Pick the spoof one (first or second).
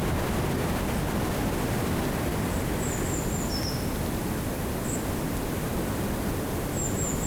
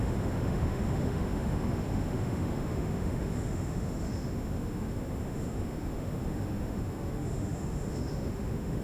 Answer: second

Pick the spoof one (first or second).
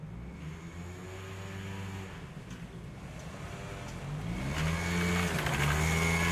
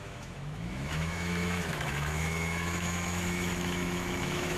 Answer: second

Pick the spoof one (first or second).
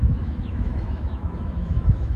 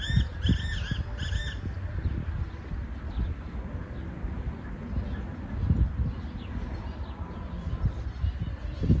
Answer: first